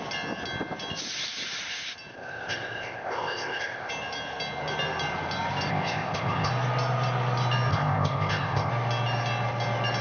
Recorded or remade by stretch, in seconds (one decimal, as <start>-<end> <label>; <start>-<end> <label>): 0.0-2.1 recorded; 2.1-3.9 remade; 3.9-5.7 recorded; 5.7-6.5 remade; 6.5-7.7 recorded; 7.7-8.7 remade; 8.7-10.0 recorded